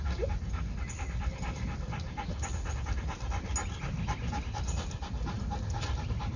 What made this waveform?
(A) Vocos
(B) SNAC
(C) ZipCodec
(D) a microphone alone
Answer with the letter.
D